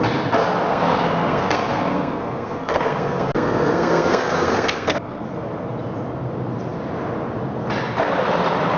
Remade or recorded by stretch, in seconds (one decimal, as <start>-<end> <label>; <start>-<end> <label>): 0.0-0.7 recorded; 0.7-5.2 remade; 5.2-8.8 recorded